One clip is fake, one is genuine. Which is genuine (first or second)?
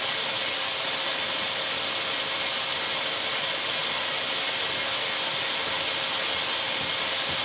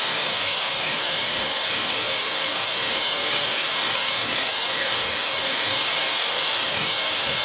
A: first